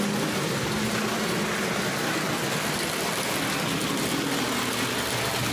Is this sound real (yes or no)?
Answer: yes